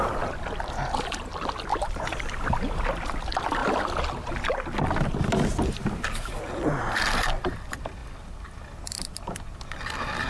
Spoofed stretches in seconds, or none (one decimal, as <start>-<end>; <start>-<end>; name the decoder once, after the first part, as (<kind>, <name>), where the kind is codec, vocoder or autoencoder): 1.7-2.2 (vocoder, BigVGAN v2)